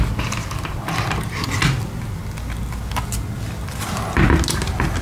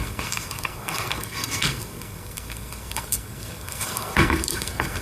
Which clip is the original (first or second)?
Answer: first